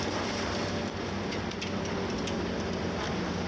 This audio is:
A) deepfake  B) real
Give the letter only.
B